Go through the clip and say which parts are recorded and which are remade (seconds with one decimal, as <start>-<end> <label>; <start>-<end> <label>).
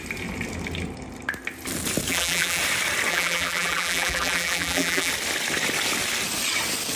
0.0-2.1 recorded; 2.1-2.6 remade; 2.6-3.1 recorded; 3.1-5.1 remade; 5.1-7.0 recorded